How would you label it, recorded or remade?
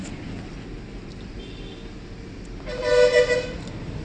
recorded